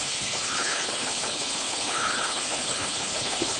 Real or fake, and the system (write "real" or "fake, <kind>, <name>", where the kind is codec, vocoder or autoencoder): fake, codec, HILCodec